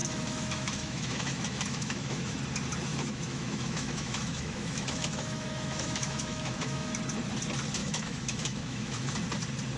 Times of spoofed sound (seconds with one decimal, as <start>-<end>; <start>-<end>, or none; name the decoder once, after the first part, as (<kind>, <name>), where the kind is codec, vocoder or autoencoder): 0.0-2.4 (autoencoder, DAC-VAE); 2.9-7.0; 7.8-9.1